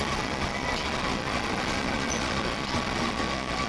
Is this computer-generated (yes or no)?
yes